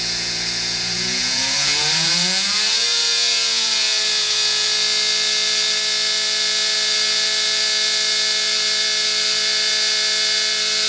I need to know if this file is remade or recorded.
remade